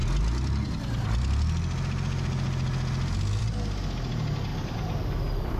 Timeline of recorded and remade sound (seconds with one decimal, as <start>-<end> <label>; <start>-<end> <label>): 0.0-4.5 recorded; 4.5-5.0 remade; 5.0-5.6 recorded